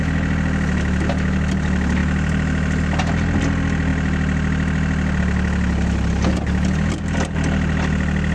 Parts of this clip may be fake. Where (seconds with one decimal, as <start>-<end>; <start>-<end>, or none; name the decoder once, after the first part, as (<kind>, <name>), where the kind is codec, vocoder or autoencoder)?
none